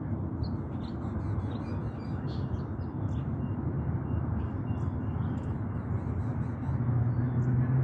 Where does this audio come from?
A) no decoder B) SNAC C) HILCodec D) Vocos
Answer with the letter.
A